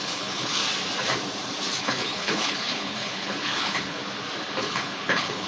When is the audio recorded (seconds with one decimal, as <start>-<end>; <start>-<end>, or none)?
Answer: 0.6-1.8; 4.0-4.6

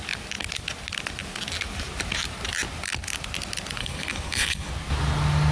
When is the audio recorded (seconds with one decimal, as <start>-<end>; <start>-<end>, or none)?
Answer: 0.0-3.8; 4.7-5.5

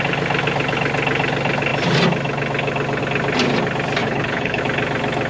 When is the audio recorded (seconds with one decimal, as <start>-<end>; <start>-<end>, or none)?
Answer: 0.0-4.0; 4.6-5.3